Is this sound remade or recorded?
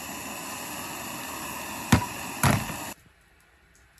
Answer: recorded